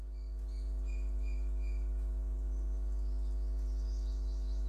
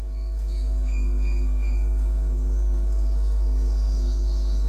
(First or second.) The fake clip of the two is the second